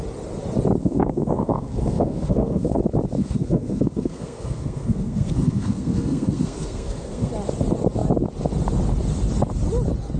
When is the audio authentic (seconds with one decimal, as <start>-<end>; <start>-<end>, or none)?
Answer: 0.0-0.8; 2.8-3.2; 7.3-10.2

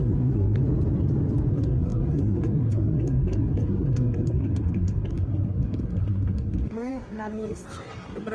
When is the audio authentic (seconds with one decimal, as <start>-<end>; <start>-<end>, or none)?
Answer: 0.6-1.5